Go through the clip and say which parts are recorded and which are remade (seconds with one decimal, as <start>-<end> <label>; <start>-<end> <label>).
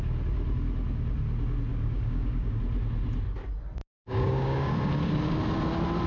0.0-1.7 recorded; 1.7-2.6 remade; 2.6-3.8 recorded; 3.8-4.7 remade; 4.7-6.1 recorded